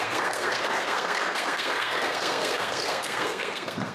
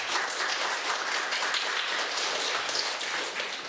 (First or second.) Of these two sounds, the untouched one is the second